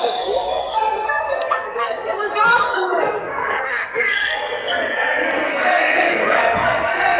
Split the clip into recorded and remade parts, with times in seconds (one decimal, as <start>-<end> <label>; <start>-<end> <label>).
0.0-7.2 remade